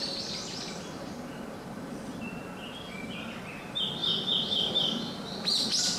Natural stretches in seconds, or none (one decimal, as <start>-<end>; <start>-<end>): 0.0-4.0